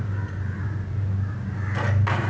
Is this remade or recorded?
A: recorded